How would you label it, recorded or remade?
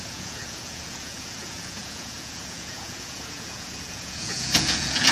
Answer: remade